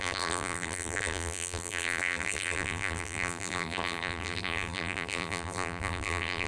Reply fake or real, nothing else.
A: fake